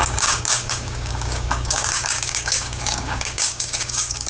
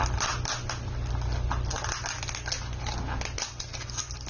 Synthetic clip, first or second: first